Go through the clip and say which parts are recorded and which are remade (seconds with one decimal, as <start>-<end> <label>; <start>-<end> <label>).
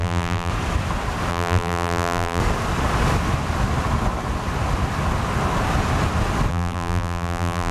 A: 0.0-0.5 remade; 0.5-1.3 recorded; 1.3-2.4 remade; 2.4-6.5 recorded; 6.5-7.7 remade